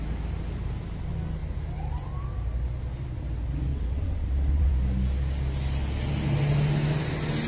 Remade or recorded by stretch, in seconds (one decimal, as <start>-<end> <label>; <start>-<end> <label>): 0.0-3.7 recorded; 3.7-4.7 remade; 4.7-7.5 recorded